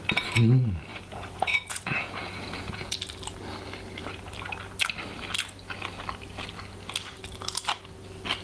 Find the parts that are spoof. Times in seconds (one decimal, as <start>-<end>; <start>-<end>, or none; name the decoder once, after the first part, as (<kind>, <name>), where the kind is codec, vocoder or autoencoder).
0.9-2.9 (vocoder, Vocos)

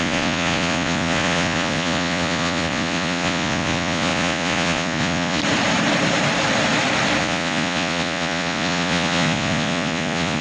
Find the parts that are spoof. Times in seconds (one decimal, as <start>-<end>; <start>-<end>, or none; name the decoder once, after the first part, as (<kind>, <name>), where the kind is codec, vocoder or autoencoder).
0.0-5.4 (vocoder, Vocos); 7.2-10.4

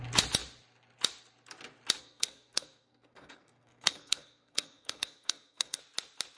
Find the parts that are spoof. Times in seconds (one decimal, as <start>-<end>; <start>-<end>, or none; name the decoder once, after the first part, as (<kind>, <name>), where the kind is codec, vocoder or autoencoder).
2.0-5.8 (codec, SNAC)

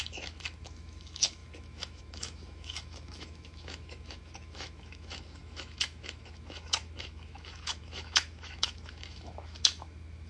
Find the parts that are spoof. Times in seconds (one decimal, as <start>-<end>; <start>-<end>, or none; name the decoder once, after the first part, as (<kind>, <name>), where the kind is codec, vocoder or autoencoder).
0.0-10.3 (autoencoder, DAC-VAE)

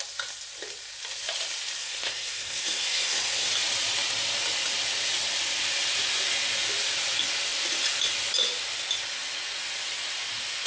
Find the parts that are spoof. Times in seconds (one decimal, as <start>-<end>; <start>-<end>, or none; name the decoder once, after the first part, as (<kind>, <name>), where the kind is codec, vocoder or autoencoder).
1.8-3.5 (codec, SNAC)

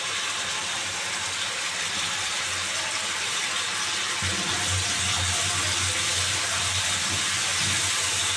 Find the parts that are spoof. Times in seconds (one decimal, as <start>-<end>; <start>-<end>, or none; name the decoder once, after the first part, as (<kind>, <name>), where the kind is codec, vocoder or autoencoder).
6.1-6.8 (vocoder, BigVGAN v2)